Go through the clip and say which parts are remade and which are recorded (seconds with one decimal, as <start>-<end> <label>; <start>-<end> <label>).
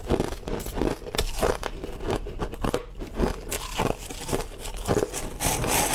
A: 0.0-5.9 recorded